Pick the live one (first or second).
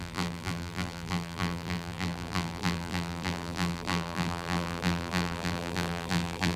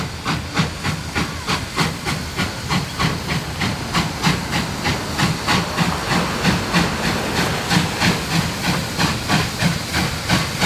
second